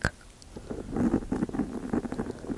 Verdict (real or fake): real